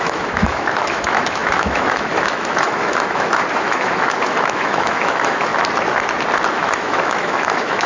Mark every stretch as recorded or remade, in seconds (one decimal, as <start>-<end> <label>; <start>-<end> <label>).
0.0-5.5 remade; 5.5-6.5 recorded; 6.5-7.9 remade